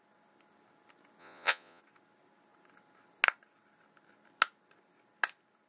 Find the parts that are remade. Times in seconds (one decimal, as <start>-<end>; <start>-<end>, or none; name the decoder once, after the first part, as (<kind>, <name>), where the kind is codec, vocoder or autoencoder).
1.2-1.8 (vocoder, Vocos)